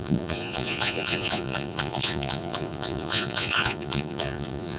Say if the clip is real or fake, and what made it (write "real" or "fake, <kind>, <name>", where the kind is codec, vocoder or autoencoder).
fake, vocoder, Vocos